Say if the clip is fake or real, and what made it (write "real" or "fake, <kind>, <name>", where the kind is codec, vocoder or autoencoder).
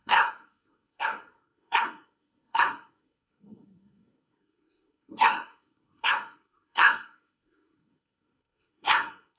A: fake, codec, SNAC